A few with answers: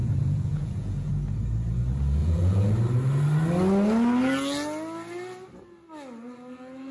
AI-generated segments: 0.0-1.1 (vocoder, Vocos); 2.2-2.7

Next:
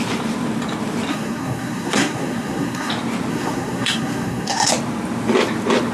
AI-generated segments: 1.1-2.9 (codec, SNAC); 3.3-4.7

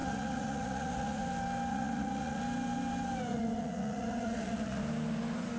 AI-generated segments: 0.0-1.2 (vocoder, Vocos); 1.7-2.4; 3.3-4.8

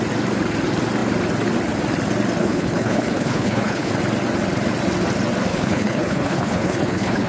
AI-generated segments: 2.4-3.9 (codec, HILCodec); 5.5-7.3

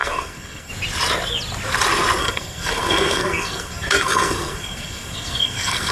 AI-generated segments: 0.0-0.7 (codec, SNAC); 2.2-5.9

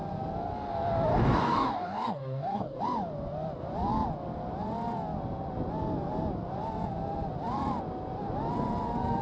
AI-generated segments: 1.1-2.8 (codec, DAC)

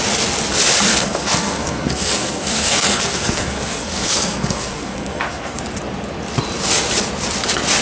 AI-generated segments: 0.9-5.6 (codec, SNAC)